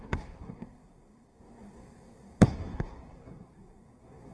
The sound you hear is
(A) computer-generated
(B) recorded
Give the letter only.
A